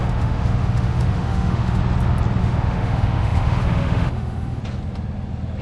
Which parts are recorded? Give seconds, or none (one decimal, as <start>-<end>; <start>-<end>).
1.8-2.4; 4.6-5.6